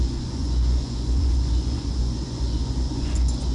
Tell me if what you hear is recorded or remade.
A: remade